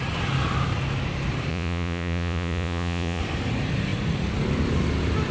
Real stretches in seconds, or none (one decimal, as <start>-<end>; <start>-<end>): 0.0-1.5; 3.2-5.3